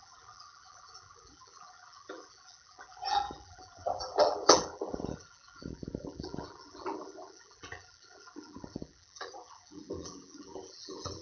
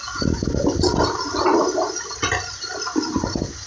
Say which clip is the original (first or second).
second